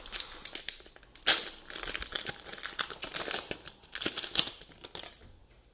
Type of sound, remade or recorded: recorded